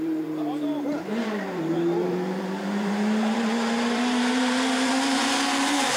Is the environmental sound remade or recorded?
remade